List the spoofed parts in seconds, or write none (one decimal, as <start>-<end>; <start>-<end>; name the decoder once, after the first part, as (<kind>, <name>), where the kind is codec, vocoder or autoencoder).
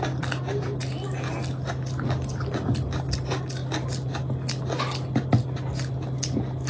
none